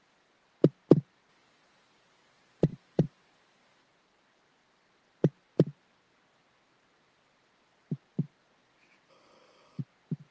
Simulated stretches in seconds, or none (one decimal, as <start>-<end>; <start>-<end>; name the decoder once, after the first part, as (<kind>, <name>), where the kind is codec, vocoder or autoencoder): 9.1-9.8 (codec, SNAC)